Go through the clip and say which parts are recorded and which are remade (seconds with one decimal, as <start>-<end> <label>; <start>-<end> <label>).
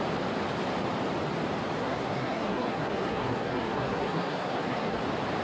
0.0-1.8 recorded; 1.8-5.0 remade; 5.0-5.4 recorded